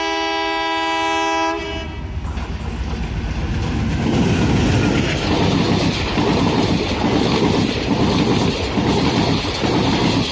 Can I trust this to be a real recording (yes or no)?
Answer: yes